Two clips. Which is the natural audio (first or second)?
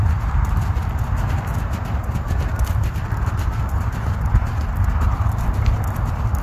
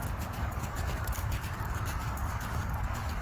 first